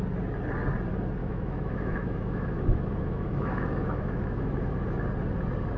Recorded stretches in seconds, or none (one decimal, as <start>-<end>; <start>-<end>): 0.0-1.2; 4.7-5.8